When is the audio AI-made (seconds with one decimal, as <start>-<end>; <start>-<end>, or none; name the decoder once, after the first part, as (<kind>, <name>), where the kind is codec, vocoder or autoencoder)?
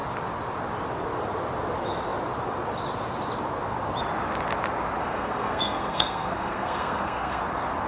5.0-7.4 (codec, SNAC)